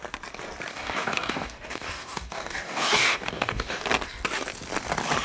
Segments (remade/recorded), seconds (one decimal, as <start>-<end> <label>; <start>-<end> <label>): 0.0-0.7 recorded; 0.7-3.8 remade; 3.8-5.2 recorded